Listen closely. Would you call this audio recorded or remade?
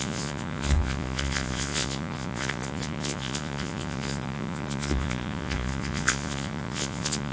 remade